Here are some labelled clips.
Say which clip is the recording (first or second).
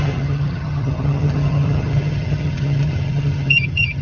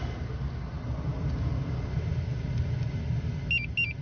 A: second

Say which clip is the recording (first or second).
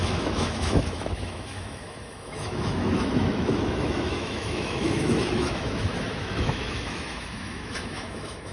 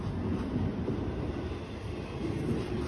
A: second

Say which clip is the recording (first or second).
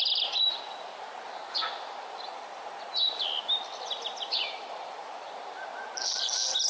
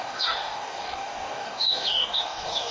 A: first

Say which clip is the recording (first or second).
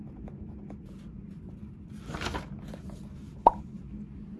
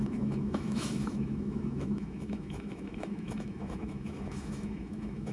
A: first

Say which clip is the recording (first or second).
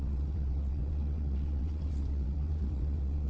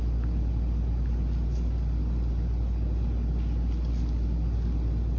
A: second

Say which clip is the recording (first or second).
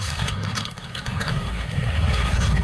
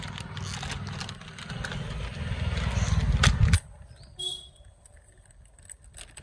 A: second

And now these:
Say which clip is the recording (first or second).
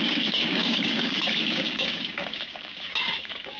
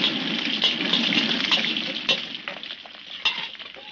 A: second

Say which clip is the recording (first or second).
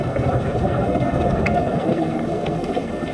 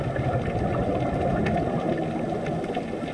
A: second